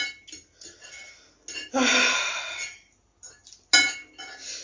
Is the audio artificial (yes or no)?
no